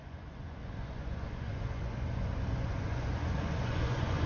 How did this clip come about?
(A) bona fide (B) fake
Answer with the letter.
B